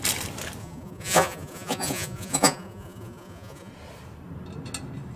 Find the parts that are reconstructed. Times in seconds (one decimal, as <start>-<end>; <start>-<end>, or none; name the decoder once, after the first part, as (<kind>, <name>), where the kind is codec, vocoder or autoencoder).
0.6-3.7 (vocoder, Vocos)